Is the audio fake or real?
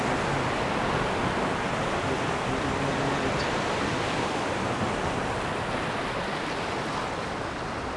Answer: real